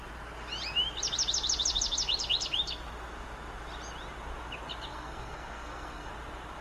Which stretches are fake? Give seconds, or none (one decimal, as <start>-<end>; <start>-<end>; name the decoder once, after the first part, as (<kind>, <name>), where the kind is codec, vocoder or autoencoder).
4.9-6.1 (codec, SNAC)

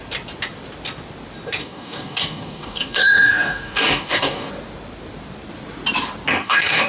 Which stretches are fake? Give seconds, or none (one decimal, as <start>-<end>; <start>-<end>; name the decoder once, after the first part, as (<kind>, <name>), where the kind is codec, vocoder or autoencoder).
1.6-4.5 (codec, DAC); 6.3-6.9